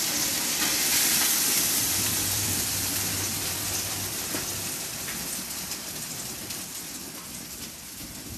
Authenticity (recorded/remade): remade